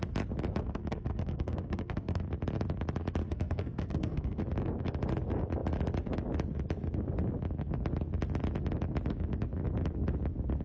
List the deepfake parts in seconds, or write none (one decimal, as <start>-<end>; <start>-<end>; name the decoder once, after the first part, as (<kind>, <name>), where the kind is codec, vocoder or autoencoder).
0.6-2.2 (codec, SNAC); 3.2-4.4